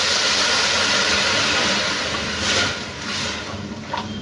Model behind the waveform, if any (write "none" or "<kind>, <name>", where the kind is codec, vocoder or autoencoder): none